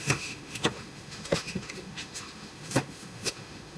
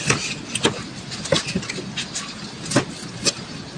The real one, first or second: second